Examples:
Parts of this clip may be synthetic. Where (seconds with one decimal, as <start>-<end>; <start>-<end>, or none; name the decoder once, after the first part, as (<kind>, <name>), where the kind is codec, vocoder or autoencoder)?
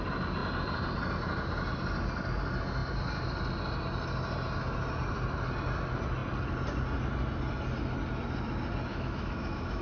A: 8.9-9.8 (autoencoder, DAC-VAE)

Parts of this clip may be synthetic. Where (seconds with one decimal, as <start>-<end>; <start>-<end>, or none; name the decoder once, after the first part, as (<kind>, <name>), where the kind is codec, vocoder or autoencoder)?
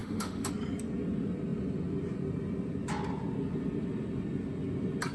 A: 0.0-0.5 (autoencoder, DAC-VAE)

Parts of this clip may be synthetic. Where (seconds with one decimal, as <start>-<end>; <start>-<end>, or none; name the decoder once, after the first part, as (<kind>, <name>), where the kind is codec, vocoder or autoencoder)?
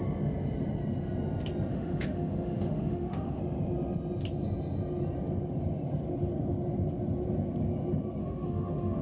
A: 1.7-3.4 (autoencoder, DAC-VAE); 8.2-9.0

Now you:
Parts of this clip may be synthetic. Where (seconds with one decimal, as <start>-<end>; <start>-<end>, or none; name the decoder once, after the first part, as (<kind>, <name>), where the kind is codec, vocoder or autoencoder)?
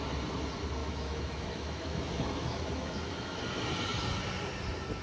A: 0.8-3.4 (autoencoder, DAC-VAE)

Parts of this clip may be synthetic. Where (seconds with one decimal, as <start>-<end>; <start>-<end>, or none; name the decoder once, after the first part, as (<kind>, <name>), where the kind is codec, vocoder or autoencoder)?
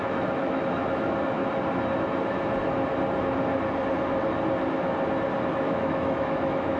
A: 0.0-1.4 (autoencoder, DAC-VAE); 5.5-6.8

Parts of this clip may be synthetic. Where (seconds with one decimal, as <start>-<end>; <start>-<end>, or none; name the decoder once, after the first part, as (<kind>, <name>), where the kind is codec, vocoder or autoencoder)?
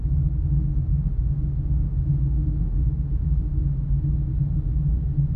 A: 0.9-4.1 (autoencoder, DAC-VAE)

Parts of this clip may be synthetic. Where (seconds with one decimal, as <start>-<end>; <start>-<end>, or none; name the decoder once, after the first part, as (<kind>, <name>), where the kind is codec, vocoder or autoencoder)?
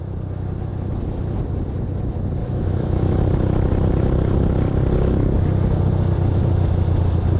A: 2.4-3.2 (autoencoder, DAC-VAE)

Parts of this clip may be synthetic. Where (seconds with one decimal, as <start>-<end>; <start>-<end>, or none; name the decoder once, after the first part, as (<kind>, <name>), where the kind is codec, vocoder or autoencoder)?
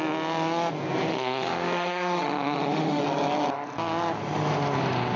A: 1.1-3.0 (autoencoder, DAC-VAE)